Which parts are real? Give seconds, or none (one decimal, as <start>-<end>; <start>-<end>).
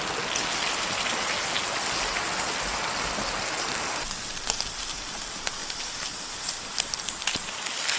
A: 0.0-8.0